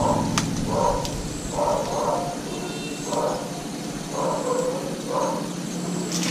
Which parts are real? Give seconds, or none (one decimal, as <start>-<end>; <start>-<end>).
0.0-6.3